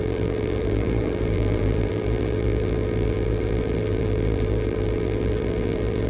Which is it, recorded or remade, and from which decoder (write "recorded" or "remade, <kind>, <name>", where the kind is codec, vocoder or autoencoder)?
remade, vocoder, BigVGAN v2